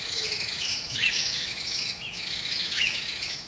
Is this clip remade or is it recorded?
remade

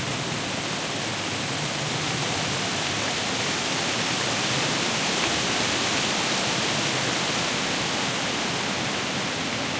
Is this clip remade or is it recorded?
recorded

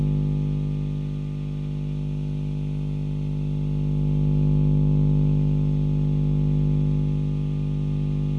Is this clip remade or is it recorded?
recorded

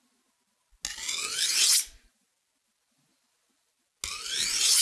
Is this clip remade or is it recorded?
recorded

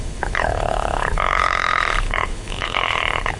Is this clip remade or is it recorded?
remade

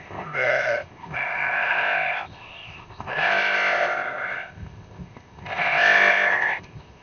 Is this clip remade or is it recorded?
remade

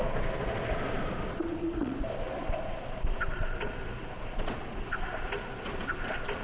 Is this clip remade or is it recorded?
remade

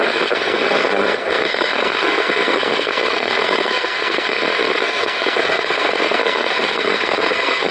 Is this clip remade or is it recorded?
remade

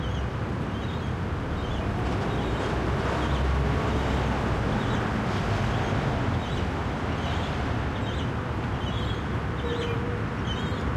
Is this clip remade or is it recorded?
recorded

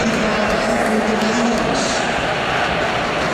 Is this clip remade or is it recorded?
recorded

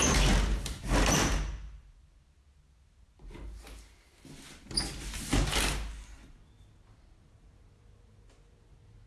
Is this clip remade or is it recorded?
recorded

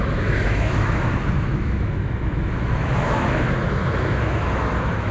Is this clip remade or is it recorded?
remade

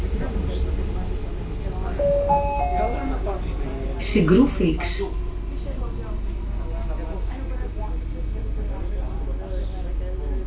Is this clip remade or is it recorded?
recorded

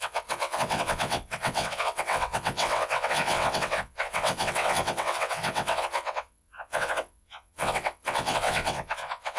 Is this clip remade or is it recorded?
remade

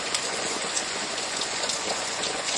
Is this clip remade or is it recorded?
remade